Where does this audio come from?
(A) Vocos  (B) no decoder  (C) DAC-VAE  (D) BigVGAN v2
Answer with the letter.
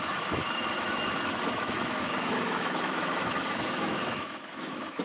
C